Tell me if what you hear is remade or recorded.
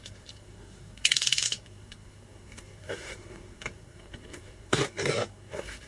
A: remade